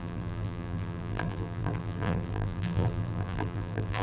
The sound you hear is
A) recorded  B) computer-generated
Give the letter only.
B